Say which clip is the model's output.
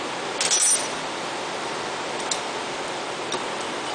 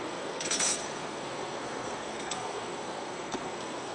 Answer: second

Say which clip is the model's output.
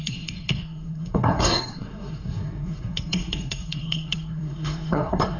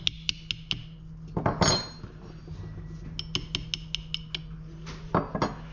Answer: first